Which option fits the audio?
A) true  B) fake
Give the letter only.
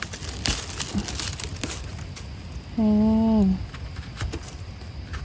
A